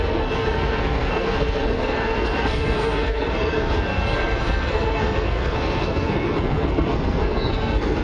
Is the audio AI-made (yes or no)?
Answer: yes